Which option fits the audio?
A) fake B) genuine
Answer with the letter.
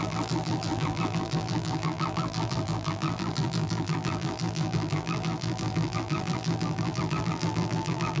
A